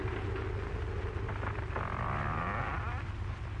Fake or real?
real